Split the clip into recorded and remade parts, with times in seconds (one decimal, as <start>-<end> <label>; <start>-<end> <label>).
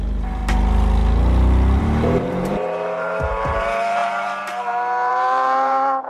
0.0-0.4 remade; 0.4-1.8 recorded; 1.8-6.1 remade